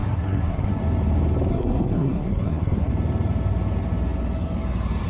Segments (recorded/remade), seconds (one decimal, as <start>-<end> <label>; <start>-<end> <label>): 0.0-0.7 remade; 0.7-1.5 recorded; 1.5-2.9 remade; 2.9-5.1 recorded